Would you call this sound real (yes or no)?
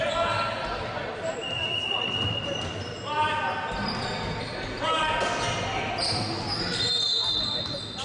yes